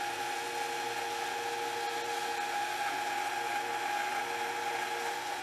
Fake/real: real